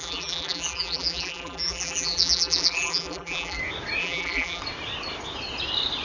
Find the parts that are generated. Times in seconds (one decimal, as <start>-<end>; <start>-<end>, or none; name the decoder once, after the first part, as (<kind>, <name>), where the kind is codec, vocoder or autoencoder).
0.0-3.6 (vocoder, BigVGAN v2); 4.0-4.6